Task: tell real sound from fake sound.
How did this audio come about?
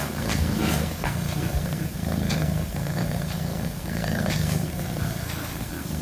fake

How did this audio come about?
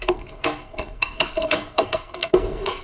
fake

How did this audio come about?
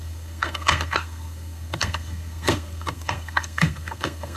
fake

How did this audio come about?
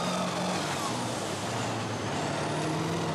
real